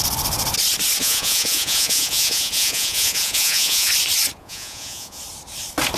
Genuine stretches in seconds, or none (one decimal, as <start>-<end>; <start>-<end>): 0.0-1.0; 3.9-4.4; 5.2-6.0